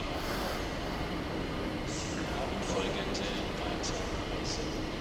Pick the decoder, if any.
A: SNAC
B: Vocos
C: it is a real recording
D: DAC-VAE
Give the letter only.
C